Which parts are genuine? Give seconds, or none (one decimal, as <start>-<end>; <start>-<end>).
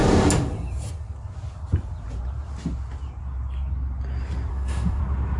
0.0-4.5; 5.0-5.4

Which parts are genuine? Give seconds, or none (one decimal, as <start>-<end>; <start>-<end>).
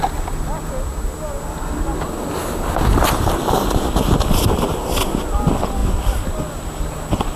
0.0-7.4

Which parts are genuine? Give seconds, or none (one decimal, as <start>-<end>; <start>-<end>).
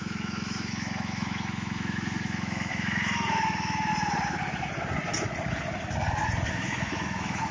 3.9-6.5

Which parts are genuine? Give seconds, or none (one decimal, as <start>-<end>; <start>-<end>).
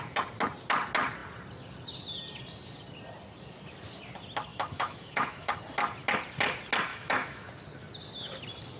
0.0-4.5; 5.5-6.9; 7.5-8.8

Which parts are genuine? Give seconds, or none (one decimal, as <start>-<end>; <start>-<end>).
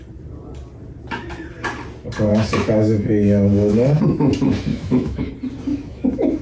0.0-2.3; 4.0-4.7; 5.3-5.7